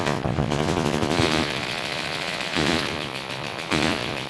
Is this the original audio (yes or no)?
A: no